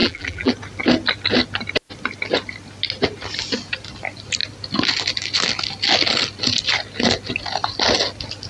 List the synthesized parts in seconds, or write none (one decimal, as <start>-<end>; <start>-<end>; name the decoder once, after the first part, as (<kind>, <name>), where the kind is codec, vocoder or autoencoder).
0.0-0.5 (vocoder, BigVGAN v2)